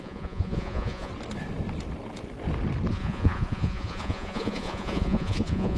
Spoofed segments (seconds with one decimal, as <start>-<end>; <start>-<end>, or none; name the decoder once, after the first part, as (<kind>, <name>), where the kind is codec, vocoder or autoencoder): 0.0-1.1 (vocoder, Vocos); 2.9-5.8